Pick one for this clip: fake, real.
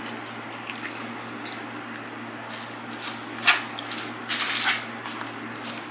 real